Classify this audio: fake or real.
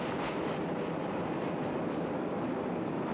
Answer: real